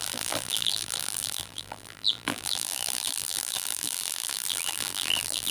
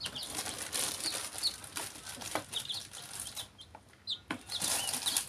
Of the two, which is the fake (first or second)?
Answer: first